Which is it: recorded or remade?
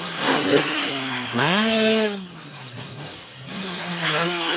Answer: remade